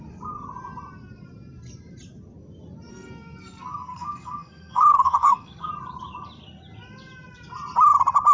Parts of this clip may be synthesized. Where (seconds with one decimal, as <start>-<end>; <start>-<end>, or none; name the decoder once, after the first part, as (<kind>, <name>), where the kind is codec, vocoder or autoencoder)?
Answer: 2.9-5.7 (codec, SNAC)